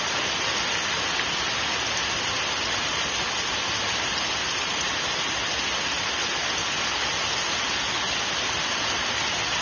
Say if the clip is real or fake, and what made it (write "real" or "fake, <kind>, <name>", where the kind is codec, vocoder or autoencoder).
real